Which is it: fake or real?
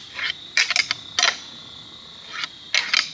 real